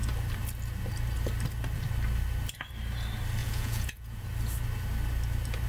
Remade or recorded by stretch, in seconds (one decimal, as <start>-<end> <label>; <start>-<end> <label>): 0.0-3.4 recorded; 3.4-4.2 remade; 4.2-5.7 recorded